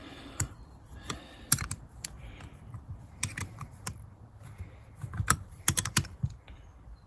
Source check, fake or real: fake